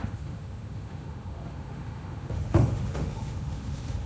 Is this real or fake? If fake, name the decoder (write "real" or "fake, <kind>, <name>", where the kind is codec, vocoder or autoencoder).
fake, autoencoder, DAC-VAE